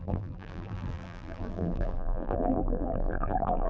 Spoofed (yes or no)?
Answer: yes